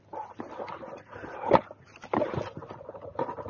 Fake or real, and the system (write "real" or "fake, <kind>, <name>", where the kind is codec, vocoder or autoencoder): real